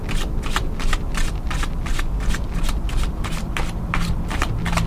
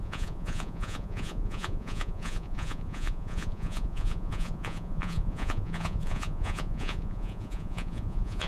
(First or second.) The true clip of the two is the first